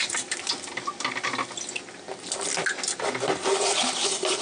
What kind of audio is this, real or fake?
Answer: real